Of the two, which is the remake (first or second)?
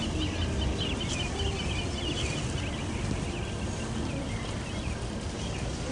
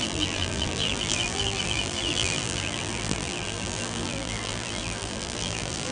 second